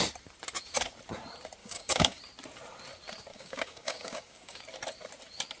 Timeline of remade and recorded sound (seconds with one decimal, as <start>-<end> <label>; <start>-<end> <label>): 0.0-1.6 recorded; 1.6-2.2 remade; 2.2-3.3 recorded; 3.3-4.6 remade; 4.6-5.6 recorded